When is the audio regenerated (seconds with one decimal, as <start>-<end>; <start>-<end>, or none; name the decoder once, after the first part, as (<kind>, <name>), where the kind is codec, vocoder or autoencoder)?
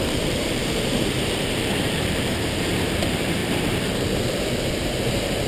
0.0-5.5 (vocoder, BigVGAN v2)